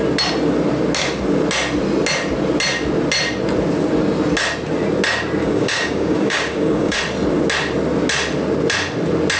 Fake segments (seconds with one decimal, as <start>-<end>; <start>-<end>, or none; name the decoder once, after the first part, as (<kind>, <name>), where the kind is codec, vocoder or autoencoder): 5.4-7.0 (codec, DAC)